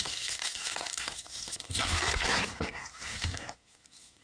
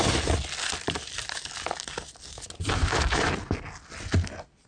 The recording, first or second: second